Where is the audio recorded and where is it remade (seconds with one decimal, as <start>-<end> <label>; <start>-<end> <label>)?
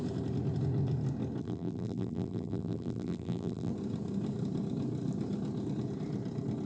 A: 0.0-1.4 recorded; 1.4-3.7 remade; 3.7-6.7 recorded